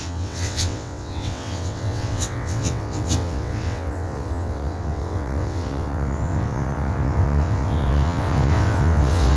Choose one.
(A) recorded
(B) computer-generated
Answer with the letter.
B